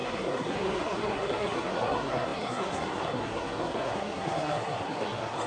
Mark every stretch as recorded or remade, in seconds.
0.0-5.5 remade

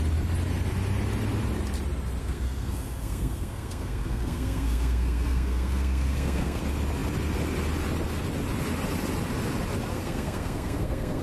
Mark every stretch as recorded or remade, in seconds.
0.0-2.2 recorded; 2.2-6.6 remade; 6.6-9.9 recorded; 9.9-11.2 remade

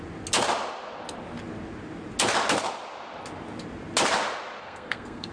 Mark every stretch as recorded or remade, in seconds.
0.0-4.6 recorded; 4.6-5.3 remade